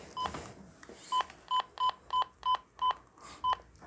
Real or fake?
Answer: real